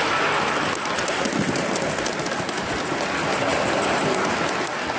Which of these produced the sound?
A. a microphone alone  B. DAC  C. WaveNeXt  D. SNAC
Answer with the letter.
A